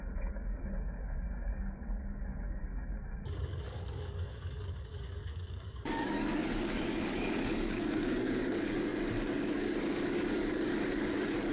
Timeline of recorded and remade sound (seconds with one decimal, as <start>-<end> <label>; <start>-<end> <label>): 0.0-8.9 remade; 8.9-9.4 recorded; 9.4-11.5 remade